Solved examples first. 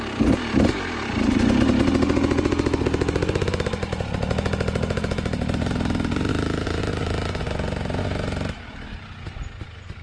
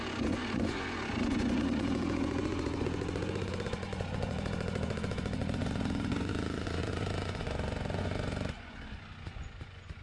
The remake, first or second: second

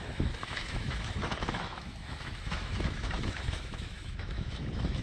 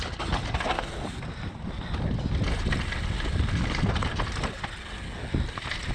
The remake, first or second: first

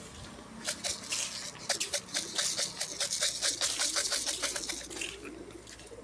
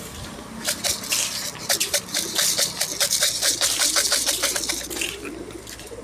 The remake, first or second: second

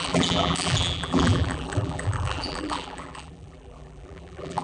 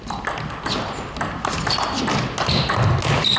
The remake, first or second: first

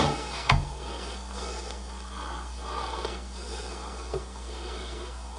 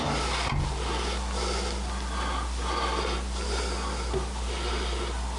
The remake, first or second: first